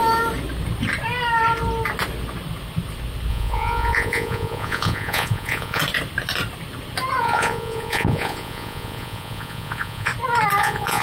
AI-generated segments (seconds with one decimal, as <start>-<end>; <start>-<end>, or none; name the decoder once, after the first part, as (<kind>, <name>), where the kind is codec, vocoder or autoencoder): 3.3-5.8 (vocoder, Vocos); 7.2-10.1; 10.6-11.0